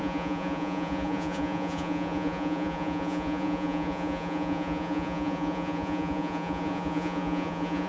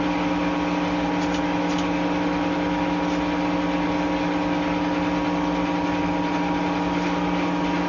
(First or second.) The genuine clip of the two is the second